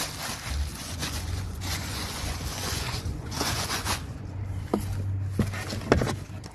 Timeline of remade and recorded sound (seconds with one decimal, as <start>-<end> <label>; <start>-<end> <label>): 0.0-0.7 recorded; 0.7-4.4 remade; 4.4-6.5 recorded